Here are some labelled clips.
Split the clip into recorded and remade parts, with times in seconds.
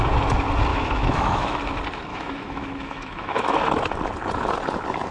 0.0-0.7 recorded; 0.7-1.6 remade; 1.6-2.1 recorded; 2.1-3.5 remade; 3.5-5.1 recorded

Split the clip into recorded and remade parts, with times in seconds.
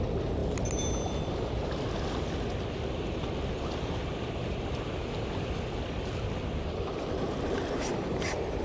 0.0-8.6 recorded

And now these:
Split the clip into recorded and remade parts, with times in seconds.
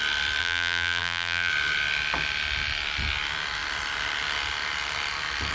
0.0-0.4 recorded; 0.4-1.5 remade; 1.5-5.5 recorded